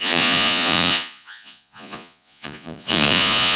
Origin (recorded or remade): remade